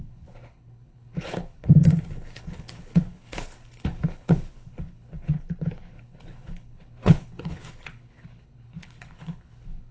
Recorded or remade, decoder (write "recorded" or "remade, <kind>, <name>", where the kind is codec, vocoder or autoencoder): remade, codec, HILCodec